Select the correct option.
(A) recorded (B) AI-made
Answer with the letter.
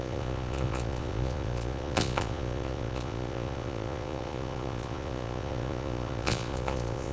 B